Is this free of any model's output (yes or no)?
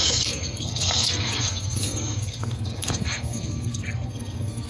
no